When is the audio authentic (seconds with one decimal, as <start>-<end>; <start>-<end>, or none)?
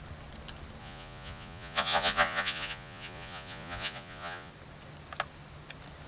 0.0-0.8; 4.5-6.1